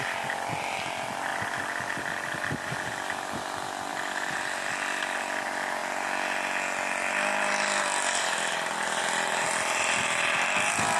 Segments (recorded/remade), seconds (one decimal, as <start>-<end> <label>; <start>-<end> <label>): 0.0-11.0 recorded